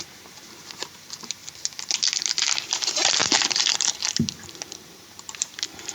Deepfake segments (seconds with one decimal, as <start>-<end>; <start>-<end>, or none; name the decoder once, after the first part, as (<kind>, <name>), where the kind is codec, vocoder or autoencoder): 0.0-5.9 (vocoder, BigVGAN v2)